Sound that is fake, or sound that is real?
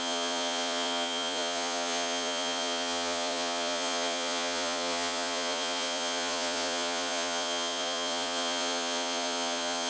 fake